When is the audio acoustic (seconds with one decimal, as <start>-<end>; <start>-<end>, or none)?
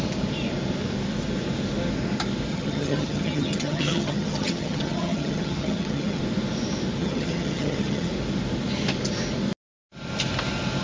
0.0-2.5; 6.2-7.0; 8.1-10.8